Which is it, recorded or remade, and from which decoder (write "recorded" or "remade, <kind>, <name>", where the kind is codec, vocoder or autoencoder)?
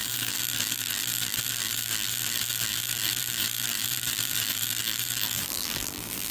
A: remade, vocoder, BigVGAN v2